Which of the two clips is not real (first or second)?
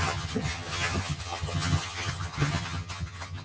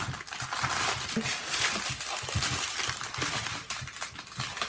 first